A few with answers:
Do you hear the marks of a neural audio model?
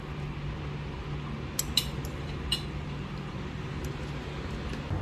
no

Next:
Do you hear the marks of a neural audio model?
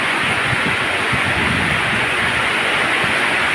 yes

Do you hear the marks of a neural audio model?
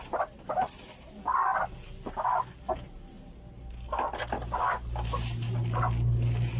no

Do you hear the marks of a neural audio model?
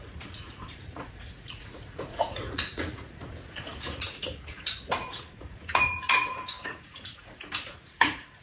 yes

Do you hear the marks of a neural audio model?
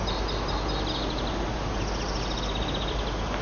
no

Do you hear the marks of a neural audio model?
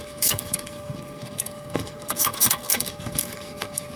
yes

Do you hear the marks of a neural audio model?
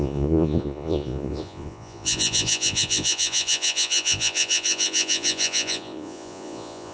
yes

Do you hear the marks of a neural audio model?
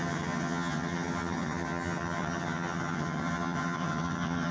yes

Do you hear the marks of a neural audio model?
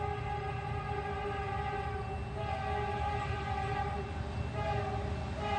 no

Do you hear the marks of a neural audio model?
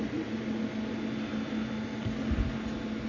no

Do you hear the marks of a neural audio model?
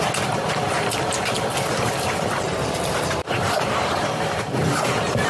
no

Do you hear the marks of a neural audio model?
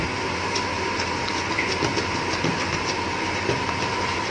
no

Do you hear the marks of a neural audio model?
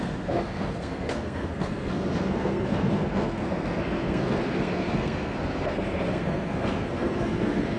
yes